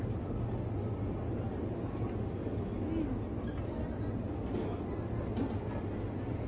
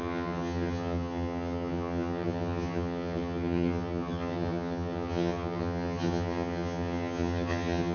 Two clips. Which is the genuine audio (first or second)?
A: first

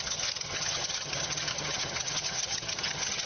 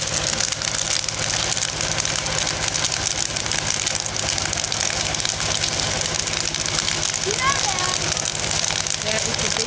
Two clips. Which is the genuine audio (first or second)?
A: second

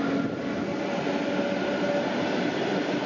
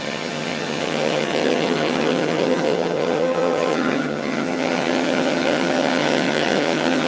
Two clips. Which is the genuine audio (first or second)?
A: first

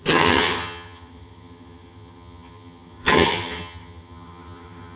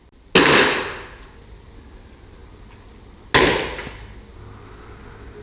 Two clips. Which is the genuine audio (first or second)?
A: second